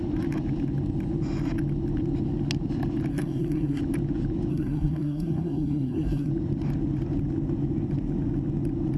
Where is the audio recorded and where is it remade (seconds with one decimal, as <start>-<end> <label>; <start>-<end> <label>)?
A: 0.0-3.1 recorded; 3.1-3.8 remade; 3.8-4.5 recorded; 4.5-6.3 remade; 6.3-9.0 recorded